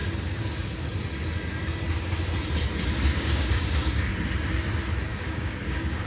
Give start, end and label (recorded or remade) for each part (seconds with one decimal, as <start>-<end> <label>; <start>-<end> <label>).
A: 0.0-3.1 recorded; 3.1-4.1 remade; 4.1-5.1 recorded; 5.1-6.1 remade